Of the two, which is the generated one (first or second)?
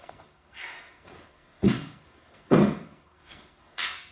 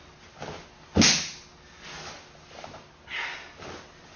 first